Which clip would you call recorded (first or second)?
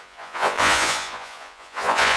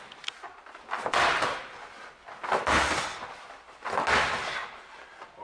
second